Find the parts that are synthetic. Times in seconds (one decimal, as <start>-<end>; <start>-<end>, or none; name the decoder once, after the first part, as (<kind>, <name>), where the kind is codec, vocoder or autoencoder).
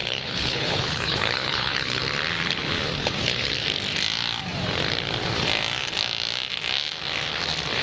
0.0-2.0 (codec, HILCodec); 3.0-3.5